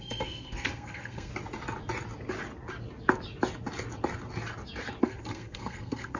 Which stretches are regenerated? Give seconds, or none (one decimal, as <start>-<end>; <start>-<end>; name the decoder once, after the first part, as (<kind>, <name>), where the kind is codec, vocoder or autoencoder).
0.0-1.3 (codec, SNAC); 5.0-6.2